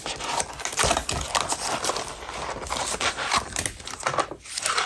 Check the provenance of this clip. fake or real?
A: real